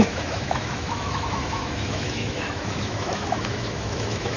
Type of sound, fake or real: fake